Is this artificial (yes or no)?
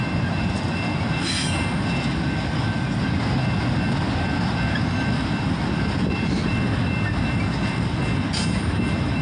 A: no